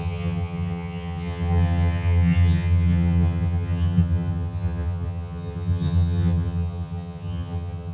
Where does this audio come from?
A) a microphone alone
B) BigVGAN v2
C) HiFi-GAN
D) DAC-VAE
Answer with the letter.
C